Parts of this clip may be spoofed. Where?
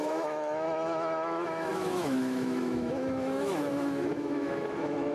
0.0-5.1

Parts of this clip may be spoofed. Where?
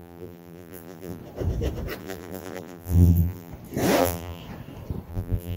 0.0-1.2; 2.0-3.5; 4.0-4.4; 5.1-5.6